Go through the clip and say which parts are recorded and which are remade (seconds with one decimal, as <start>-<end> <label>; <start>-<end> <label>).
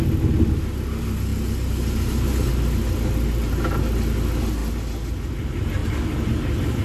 0.0-6.8 recorded